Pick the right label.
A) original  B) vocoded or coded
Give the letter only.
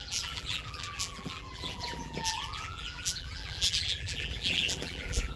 B